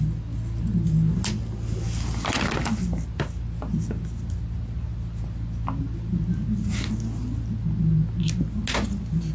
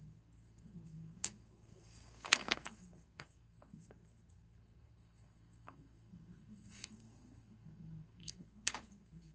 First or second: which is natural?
first